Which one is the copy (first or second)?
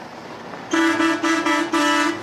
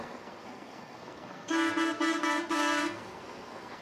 second